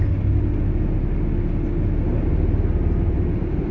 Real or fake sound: real